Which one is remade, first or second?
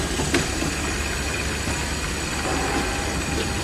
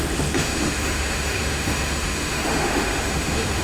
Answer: second